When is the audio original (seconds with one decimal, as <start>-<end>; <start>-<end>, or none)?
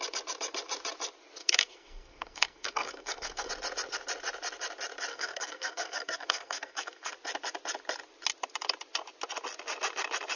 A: 0.0-1.4; 3.5-5.1; 7.1-10.4